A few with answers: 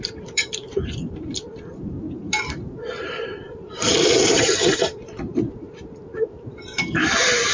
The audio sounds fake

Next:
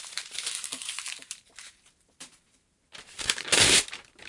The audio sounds fake